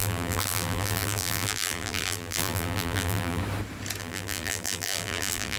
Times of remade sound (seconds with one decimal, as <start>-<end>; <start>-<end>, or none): 0.0-3.4; 4.0-5.6